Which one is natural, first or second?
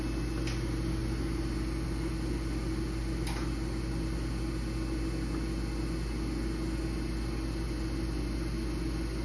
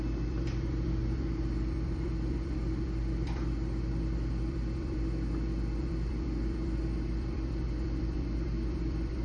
first